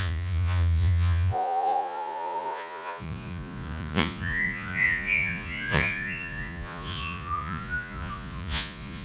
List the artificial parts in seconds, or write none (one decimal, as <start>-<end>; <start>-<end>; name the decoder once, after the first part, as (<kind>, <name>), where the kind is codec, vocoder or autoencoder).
0.0-9.0 (vocoder, Vocos)